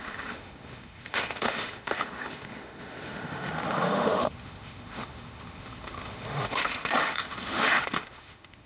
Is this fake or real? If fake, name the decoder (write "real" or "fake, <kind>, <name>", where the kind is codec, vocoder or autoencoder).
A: fake, autoencoder, DAC-VAE